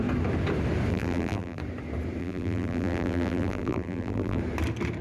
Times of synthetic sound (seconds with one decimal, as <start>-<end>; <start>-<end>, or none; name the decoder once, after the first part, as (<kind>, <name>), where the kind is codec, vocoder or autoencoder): 0.9-1.6 (vocoder, BigVGAN v2); 2.2-4.4